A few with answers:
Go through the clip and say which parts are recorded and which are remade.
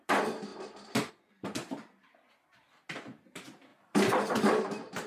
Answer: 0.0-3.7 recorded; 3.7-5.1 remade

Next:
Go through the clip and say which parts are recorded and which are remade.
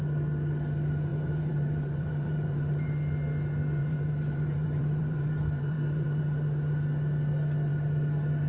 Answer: 0.0-1.1 recorded; 1.1-2.9 remade; 2.9-3.8 recorded; 3.8-6.2 remade; 6.2-8.5 recorded